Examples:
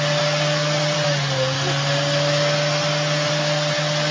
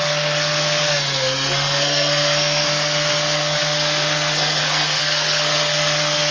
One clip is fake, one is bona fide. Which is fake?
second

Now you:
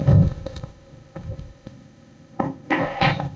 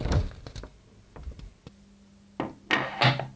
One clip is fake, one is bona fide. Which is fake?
first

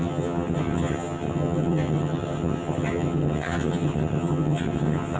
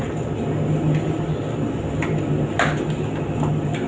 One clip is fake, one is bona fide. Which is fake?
first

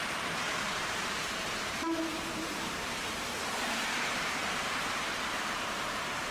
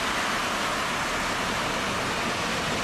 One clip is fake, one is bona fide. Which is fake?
first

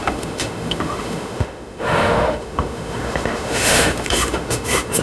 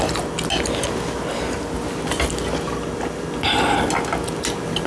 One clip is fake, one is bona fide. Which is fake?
first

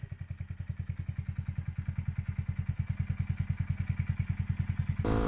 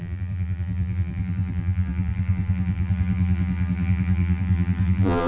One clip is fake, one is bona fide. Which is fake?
second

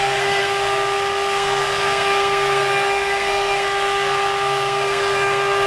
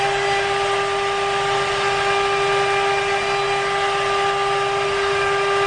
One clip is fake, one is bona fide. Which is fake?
first